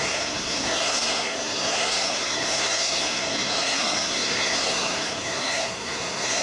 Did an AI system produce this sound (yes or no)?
yes